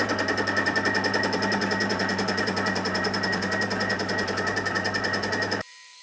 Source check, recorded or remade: remade